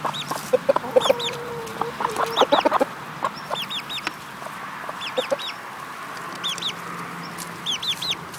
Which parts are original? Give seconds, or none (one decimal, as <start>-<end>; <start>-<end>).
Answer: 0.0-8.4